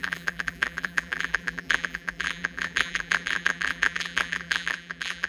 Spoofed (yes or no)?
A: yes